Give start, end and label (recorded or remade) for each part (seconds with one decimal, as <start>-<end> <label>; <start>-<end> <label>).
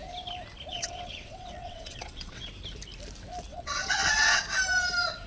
0.0-0.7 recorded; 0.7-2.5 remade; 2.5-3.5 recorded; 3.5-4.4 remade; 4.4-5.3 recorded